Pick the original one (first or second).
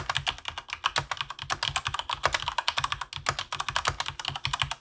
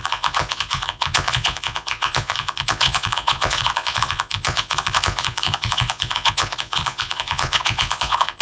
first